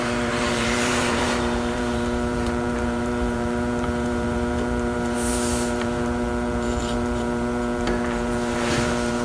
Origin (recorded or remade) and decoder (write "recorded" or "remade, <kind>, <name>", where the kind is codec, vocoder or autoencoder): remade, vocoder, BigVGAN v2